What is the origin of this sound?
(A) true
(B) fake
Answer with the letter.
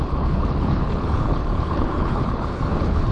B